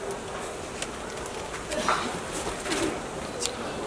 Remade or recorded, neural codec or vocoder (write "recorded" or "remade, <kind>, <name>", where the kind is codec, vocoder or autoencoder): recorded